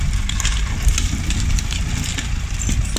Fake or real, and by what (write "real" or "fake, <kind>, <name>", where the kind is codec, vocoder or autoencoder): real